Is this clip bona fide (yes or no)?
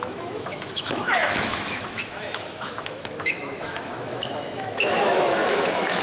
no